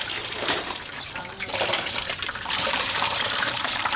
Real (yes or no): no